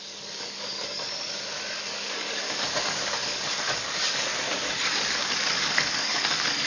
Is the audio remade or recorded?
remade